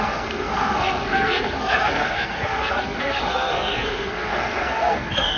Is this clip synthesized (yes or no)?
yes